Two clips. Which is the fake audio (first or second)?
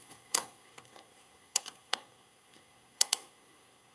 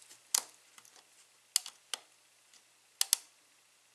first